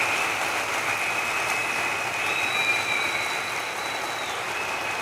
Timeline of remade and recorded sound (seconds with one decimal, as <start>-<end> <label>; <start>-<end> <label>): 0.0-5.0 recorded